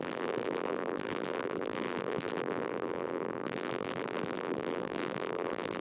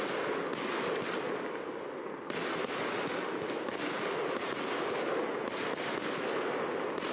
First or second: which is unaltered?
second